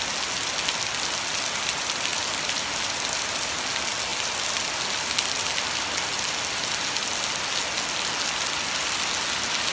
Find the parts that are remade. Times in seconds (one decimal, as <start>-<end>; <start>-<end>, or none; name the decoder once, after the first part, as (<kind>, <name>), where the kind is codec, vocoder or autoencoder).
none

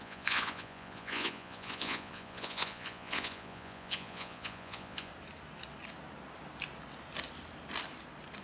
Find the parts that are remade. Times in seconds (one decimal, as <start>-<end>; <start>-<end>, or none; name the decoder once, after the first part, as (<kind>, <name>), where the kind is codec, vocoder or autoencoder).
0.0-5.1 (vocoder, Vocos)

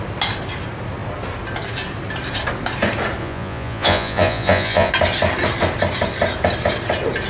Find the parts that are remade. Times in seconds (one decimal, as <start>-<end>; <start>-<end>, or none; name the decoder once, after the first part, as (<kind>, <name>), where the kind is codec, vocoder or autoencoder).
3.2-4.9 (vocoder, Vocos)

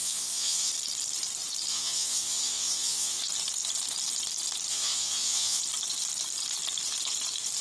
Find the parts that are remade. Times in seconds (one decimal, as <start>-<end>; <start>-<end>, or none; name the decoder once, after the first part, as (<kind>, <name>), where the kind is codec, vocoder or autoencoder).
0.0-0.7 (vocoder, Vocos); 1.7-3.2; 4.7-5.6

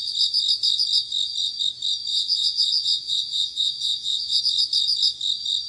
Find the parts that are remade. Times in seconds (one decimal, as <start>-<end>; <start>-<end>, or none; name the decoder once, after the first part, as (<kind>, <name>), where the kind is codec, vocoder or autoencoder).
2.1-4.4 (vocoder, Vocos)

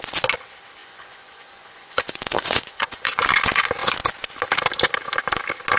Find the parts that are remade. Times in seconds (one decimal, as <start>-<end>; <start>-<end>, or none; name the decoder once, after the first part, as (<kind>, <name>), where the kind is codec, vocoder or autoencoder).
0.8-3.2 (vocoder, Vocos)